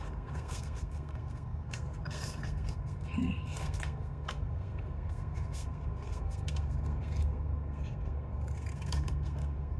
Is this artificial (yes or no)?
yes